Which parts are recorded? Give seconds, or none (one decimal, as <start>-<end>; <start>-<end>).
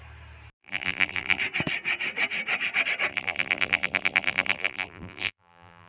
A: 0.0-0.6; 1.4-3.1